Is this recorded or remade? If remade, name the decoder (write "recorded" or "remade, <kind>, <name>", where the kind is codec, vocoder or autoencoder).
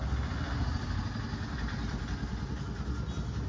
recorded